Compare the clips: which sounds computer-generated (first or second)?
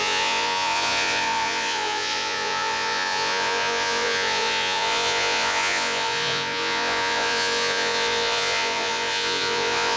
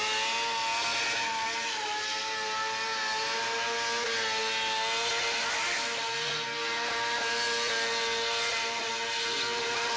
first